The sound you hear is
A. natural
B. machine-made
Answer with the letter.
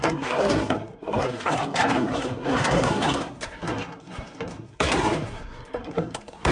B